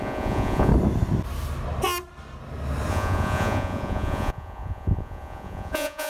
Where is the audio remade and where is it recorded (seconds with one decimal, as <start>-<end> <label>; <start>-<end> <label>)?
0.0-0.7 remade; 0.7-2.9 recorded; 2.9-6.1 remade